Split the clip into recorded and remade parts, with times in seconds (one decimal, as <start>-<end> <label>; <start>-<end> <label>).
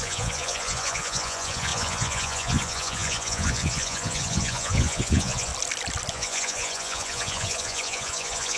0.0-5.5 remade; 5.5-6.1 recorded; 6.1-8.6 remade